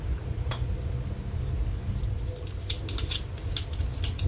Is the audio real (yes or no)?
yes